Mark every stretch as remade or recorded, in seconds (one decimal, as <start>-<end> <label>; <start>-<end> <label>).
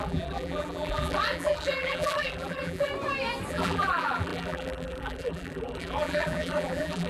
0.0-2.9 remade; 2.9-3.5 recorded; 3.5-7.1 remade